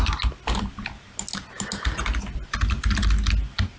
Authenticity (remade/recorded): recorded